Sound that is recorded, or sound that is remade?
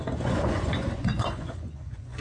remade